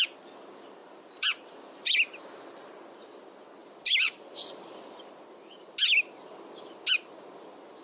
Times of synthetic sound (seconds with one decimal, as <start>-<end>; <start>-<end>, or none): 0.8-2.7; 3.6-5.5